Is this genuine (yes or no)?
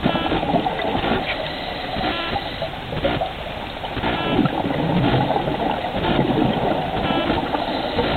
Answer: yes